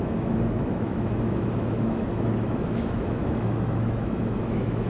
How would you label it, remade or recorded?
remade